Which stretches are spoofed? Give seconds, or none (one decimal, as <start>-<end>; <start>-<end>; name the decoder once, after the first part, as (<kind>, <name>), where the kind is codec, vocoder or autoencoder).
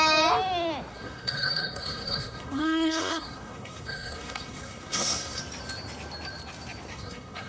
0.9-5.4 (codec, SNAC); 6.9-7.5